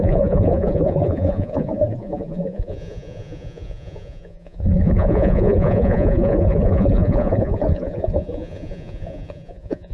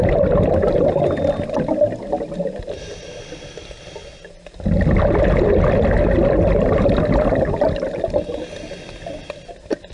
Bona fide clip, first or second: second